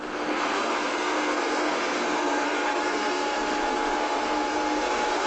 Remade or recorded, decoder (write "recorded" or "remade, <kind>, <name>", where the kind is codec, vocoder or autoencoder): remade, codec, SNAC